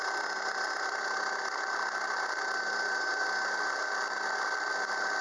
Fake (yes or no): no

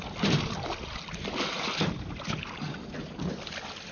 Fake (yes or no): no